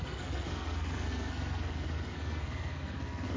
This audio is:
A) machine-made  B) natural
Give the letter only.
A